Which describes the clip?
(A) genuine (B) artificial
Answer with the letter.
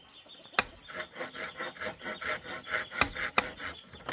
A